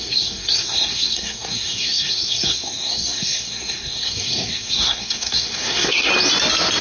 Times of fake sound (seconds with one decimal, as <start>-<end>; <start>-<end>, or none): 0.0-6.1

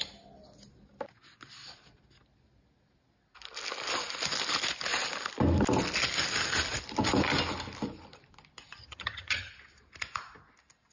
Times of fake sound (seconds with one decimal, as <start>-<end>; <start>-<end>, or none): 8.8-9.5